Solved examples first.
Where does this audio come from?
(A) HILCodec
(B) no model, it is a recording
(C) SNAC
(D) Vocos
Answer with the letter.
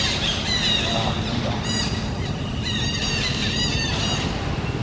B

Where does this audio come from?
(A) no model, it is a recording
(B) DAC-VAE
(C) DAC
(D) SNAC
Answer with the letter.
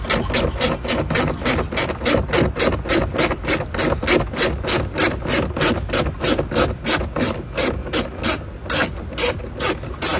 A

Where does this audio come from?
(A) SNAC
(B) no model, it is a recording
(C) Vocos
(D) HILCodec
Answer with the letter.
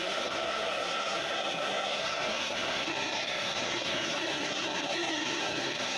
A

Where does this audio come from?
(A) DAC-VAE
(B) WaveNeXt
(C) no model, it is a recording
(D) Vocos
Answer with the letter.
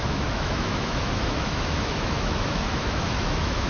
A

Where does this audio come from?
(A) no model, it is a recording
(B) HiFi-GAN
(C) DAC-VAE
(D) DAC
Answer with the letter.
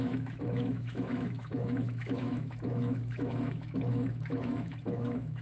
C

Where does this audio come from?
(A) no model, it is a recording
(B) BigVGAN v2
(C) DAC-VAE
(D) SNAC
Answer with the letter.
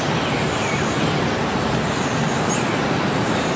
A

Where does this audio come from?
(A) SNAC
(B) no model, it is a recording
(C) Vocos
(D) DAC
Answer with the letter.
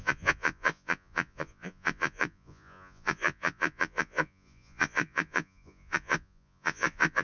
C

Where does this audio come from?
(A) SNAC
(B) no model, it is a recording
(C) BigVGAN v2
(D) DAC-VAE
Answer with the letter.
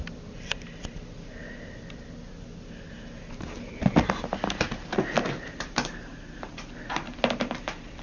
B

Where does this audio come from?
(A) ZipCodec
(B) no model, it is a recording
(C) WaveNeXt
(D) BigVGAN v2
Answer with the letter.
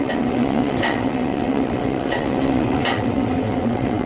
C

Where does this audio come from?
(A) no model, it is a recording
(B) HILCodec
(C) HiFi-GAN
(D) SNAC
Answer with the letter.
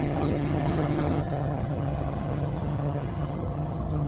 C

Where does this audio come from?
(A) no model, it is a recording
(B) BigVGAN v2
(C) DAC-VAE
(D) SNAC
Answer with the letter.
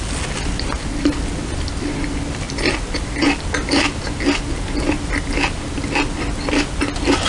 A